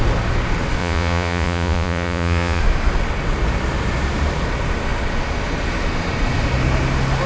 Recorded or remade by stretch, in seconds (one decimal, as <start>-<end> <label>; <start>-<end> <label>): 0.0-0.8 recorded; 0.8-2.6 remade; 2.6-7.3 recorded